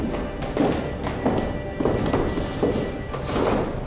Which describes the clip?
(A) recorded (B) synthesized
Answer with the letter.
A